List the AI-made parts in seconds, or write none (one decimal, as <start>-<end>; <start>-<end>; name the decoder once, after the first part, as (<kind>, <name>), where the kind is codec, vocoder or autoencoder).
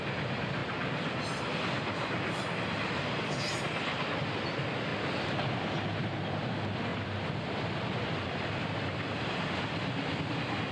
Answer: 0.6-3.6 (vocoder, BigVGAN v2); 4.9-6.0; 6.9-10.7